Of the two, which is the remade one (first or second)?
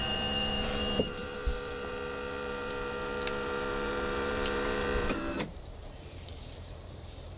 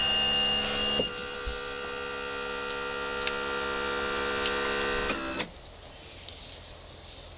first